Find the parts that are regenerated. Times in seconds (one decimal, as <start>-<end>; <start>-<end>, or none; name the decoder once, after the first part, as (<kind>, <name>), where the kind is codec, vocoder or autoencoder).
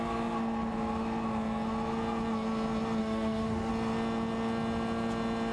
3.0-3.7 (autoencoder, DAC-VAE)